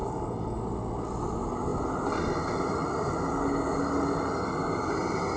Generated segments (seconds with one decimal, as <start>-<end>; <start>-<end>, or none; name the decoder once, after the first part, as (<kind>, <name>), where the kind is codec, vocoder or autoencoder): 0.0-0.6 (codec, DAC)